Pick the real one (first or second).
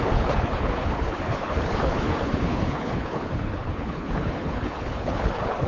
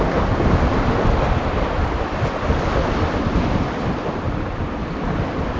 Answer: second